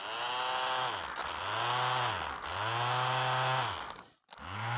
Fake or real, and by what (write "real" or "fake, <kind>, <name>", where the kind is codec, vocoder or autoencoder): real